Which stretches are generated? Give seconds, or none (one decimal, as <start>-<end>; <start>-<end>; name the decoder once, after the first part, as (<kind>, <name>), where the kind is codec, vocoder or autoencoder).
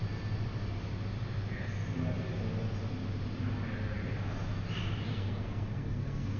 5.1-6.4 (codec, SNAC)